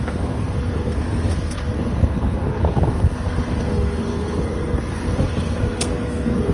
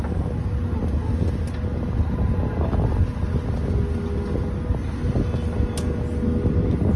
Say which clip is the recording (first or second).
second